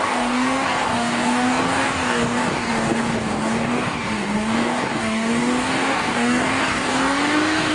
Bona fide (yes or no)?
no